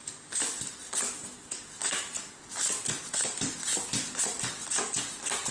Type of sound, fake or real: real